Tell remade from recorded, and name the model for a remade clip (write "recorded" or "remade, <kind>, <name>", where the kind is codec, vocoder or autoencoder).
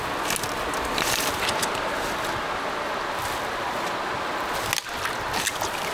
recorded